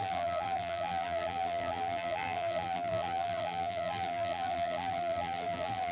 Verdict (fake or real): fake